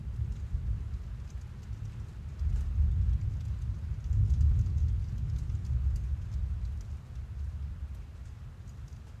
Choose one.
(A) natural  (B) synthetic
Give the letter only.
A